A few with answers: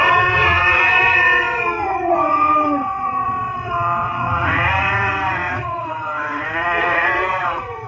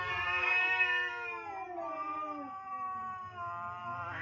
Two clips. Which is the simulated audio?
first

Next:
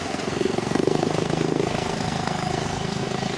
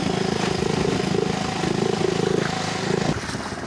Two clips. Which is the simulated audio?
first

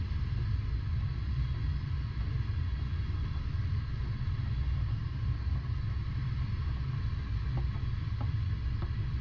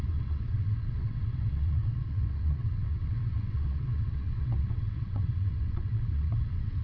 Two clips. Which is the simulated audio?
second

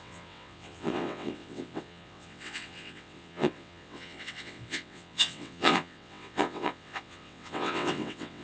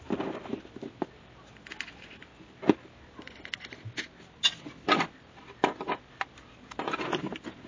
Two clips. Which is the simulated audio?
first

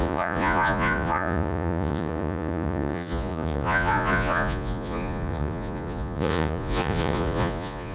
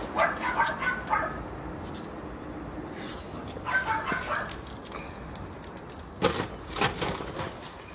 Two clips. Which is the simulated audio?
first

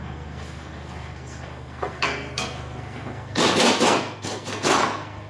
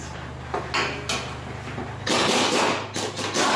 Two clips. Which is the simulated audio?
first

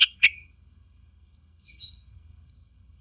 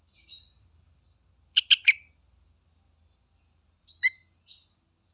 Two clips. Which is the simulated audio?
first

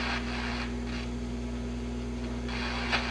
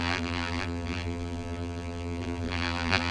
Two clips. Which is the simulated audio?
second